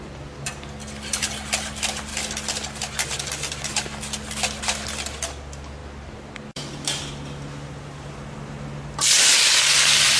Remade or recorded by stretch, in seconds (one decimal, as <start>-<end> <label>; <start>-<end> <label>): 0.0-10.2 recorded